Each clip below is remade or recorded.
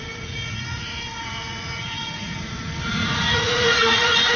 remade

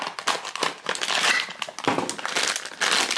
recorded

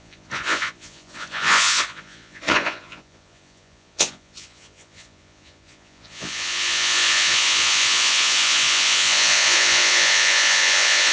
remade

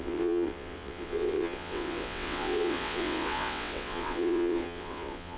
remade